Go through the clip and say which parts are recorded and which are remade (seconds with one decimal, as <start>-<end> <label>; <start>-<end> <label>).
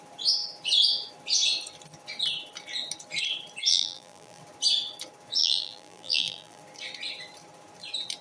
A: 0.0-3.7 recorded; 3.7-4.4 remade; 4.4-5.4 recorded; 5.4-6.6 remade; 6.6-8.2 recorded